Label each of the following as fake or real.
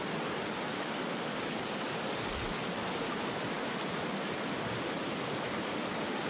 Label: real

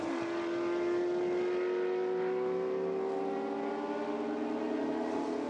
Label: real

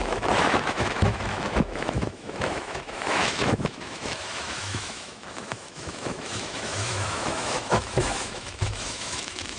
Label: fake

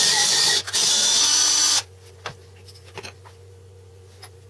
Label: fake